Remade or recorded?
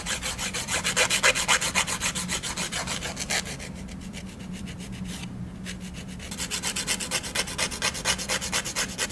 recorded